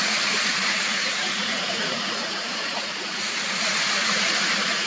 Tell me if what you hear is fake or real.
fake